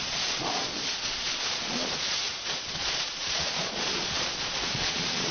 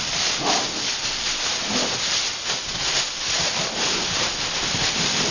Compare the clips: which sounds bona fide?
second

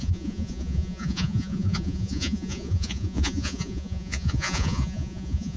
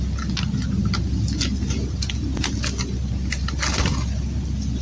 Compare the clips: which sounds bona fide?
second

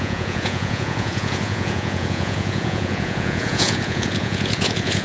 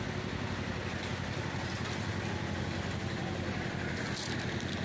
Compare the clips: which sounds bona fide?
second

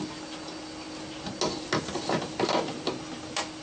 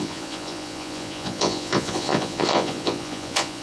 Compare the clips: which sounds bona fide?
first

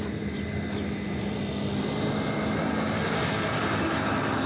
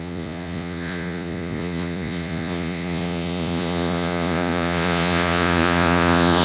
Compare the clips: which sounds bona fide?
first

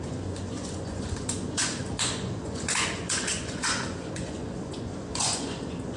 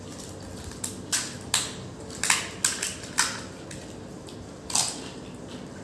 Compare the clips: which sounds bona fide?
second